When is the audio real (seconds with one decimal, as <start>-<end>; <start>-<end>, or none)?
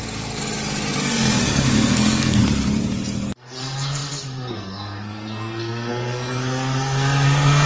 0.0-1.0; 2.4-3.3